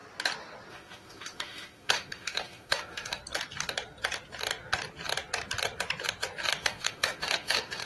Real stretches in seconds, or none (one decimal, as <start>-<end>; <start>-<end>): 0.0-0.7; 3.2-6.6